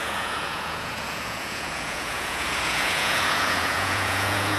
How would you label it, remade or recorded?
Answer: remade